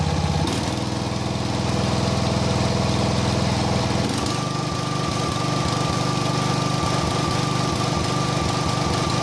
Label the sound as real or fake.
real